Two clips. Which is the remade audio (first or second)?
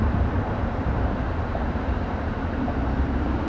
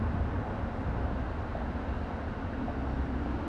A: first